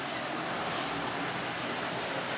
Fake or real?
real